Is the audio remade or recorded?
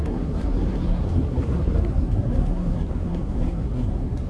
remade